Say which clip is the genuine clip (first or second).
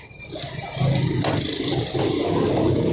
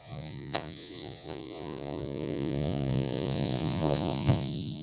first